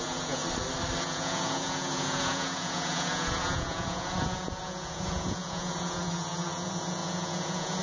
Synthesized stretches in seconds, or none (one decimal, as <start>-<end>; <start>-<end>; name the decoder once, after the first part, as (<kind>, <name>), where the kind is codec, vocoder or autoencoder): 0.0-0.4 (vocoder, Vocos); 1.0-7.8